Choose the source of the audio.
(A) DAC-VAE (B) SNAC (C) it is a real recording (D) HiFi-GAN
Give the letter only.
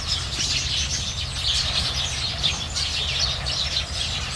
C